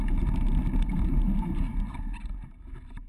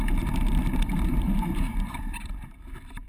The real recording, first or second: first